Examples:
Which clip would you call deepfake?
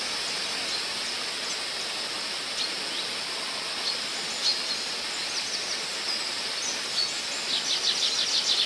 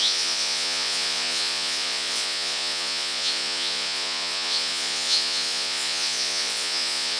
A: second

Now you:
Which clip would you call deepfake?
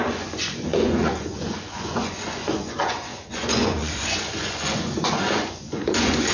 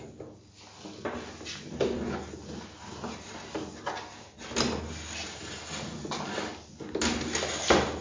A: first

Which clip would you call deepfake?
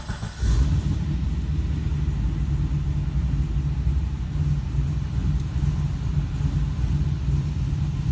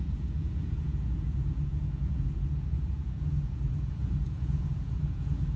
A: second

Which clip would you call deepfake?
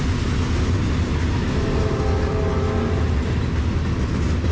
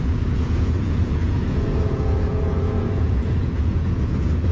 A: second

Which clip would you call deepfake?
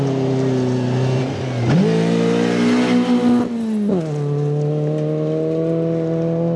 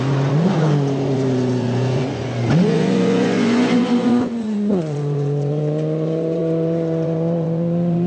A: second